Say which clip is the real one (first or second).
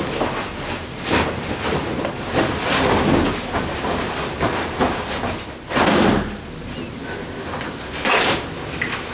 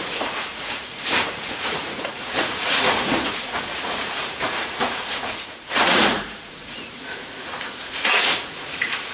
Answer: first